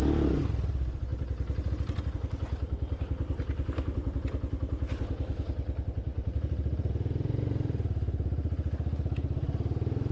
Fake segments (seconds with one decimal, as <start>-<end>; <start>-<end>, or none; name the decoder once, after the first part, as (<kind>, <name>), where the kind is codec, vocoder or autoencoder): none